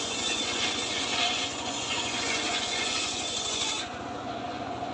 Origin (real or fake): fake